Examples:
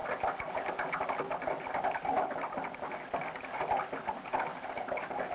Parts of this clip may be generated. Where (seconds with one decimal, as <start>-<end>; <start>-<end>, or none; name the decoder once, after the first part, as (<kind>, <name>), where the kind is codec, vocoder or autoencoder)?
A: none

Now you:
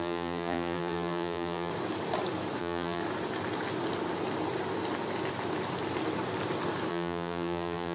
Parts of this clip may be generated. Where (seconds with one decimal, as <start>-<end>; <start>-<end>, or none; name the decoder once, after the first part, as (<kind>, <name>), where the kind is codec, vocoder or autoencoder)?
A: 0.0-1.7 (vocoder, BigVGAN v2); 2.6-3.0; 6.9-7.9

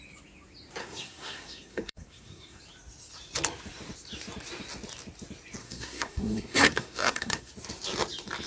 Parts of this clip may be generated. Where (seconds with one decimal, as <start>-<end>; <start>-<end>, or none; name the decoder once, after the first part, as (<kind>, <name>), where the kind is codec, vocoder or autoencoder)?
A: 0.8-2.6 (codec, SNAC); 5.6-7.5

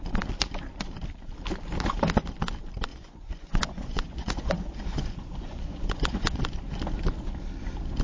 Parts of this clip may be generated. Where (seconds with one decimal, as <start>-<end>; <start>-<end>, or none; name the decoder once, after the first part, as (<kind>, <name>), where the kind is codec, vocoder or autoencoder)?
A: 2.9-6.4 (vocoder, Vocos)

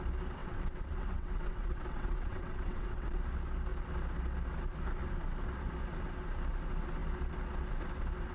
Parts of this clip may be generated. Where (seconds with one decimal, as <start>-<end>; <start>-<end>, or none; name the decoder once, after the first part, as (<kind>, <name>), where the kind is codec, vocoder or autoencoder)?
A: 0.4-3.2 (vocoder, WaveNeXt)

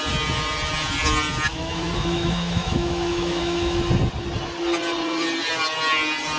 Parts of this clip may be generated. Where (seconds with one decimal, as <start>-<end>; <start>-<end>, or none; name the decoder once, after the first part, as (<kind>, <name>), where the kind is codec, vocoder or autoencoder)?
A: 1.5-3.8 (autoencoder, DAC-VAE)

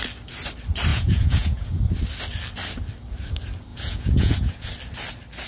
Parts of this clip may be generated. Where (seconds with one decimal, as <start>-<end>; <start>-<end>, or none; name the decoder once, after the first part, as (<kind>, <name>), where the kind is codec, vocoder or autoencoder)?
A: 0.9-1.9 (vocoder, Vocos); 3.7-4.7

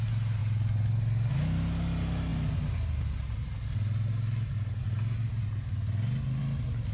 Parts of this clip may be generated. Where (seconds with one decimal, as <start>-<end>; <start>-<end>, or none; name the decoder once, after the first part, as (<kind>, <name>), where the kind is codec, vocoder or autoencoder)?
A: none